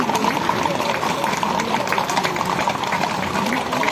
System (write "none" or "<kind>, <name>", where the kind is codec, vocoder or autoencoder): vocoder, BigVGAN v2